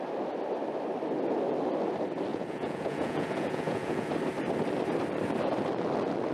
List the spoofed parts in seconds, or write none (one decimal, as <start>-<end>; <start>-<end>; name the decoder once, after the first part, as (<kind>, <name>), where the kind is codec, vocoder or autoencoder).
2.3-4.1 (vocoder, Vocos)